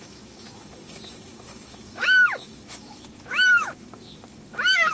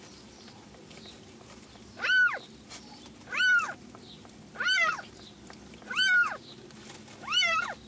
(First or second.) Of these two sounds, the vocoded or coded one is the first